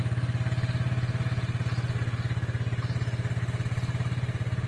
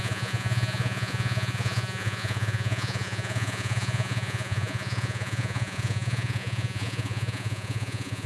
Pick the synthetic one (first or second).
second